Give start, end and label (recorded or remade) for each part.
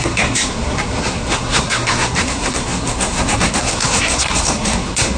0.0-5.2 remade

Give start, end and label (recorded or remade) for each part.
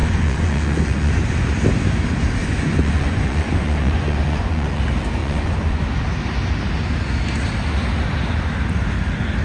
0.0-1.1 remade; 1.1-2.4 recorded; 2.4-4.8 remade; 4.8-5.2 recorded; 5.2-5.8 remade; 5.8-9.4 recorded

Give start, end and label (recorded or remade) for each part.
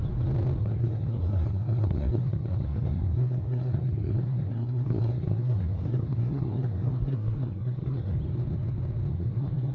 0.0-0.6 recorded; 0.6-8.2 remade; 8.2-9.1 recorded; 9.1-9.7 remade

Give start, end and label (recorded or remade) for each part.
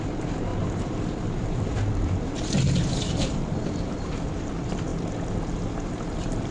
0.0-0.5 recorded; 0.5-4.4 remade; 4.4-6.5 recorded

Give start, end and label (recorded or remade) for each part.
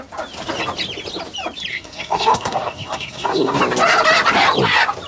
0.0-1.7 recorded; 1.7-3.6 remade; 3.6-5.1 recorded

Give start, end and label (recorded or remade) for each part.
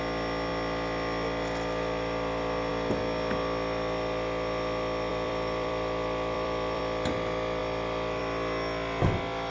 0.0-5.1 recorded; 5.1-6.8 remade; 6.8-9.5 recorded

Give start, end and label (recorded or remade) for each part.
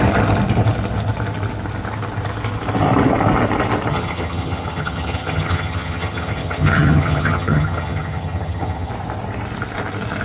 0.0-3.9 recorded; 3.9-8.9 remade; 8.9-10.2 recorded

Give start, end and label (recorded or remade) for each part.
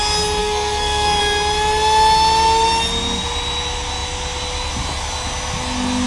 0.0-0.4 recorded; 0.4-1.2 remade; 1.2-6.1 recorded